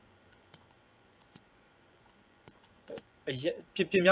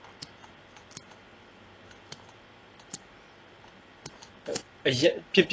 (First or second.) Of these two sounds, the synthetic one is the first